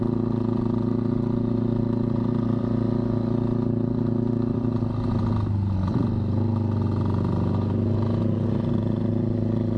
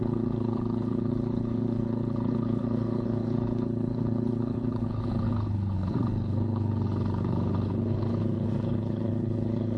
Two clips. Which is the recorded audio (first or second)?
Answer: first